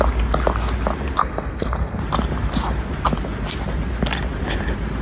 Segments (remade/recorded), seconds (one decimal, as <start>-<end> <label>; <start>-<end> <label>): 0.0-1.2 recorded; 1.2-2.0 remade; 2.0-5.0 recorded